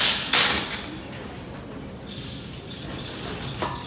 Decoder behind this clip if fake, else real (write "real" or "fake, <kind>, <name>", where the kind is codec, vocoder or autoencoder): real